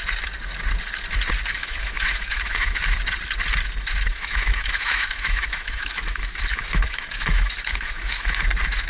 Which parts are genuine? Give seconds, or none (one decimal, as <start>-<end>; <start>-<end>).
0.0-1.6; 2.8-4.1; 8.4-8.9